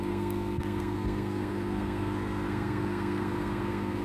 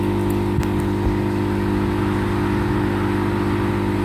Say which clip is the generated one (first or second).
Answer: first